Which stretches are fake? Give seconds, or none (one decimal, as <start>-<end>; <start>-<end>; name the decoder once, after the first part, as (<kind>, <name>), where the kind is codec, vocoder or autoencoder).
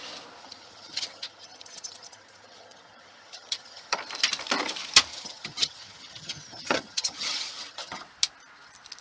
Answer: 0.4-4.0 (vocoder, HiFi-GAN); 5.1-8.0